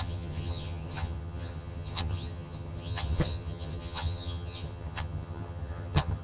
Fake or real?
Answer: fake